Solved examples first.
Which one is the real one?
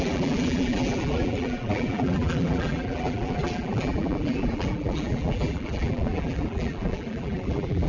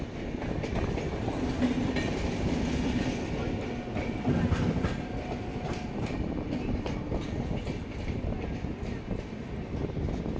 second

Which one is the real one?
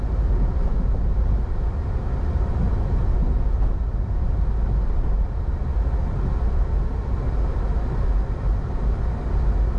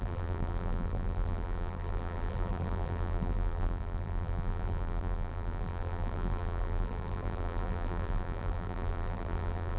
first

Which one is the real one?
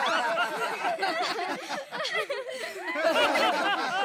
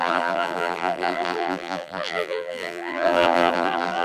first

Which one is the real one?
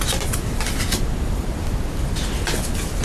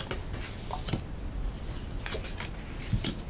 second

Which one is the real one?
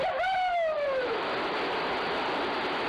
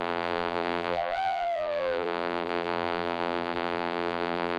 first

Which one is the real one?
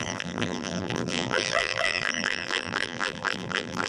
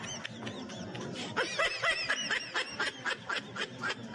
second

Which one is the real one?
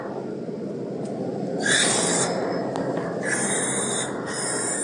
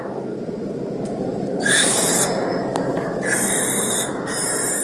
first